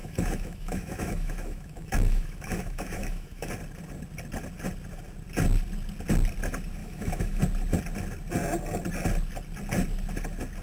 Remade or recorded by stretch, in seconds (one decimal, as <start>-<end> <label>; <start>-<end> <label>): 0.0-3.5 remade; 3.5-6.8 recorded; 6.8-7.4 remade; 7.4-10.6 recorded